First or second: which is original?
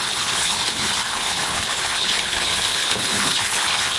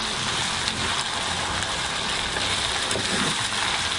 second